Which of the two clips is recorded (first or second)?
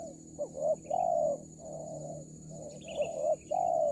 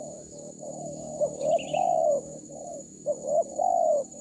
first